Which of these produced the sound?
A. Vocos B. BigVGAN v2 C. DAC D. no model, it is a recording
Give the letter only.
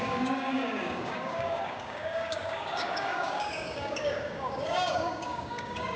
C